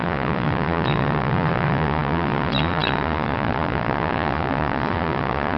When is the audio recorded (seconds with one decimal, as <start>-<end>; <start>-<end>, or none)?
none